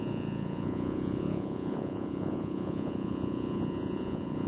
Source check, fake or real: fake